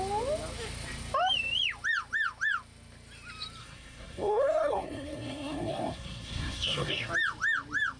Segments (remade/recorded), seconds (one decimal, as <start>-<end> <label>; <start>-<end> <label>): 0.0-3.6 recorded; 3.6-7.1 remade; 7.1-8.0 recorded